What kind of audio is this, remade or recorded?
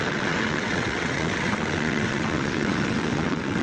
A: remade